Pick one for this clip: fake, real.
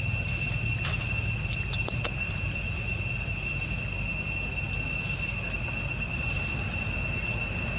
real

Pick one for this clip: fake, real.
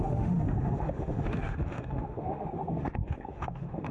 fake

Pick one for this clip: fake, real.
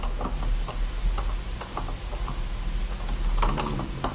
real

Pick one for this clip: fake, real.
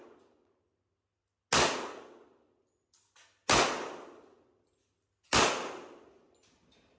real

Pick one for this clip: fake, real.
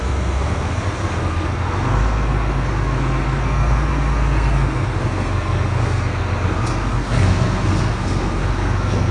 fake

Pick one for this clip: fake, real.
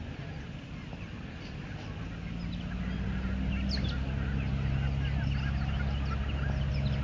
real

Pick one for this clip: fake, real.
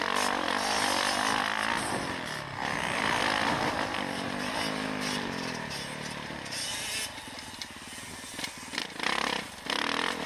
real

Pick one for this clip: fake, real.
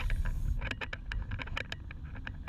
real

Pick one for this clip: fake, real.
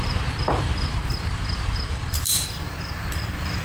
fake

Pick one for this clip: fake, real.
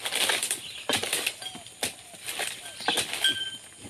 real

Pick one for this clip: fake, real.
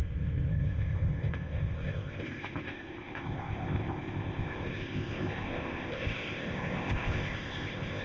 fake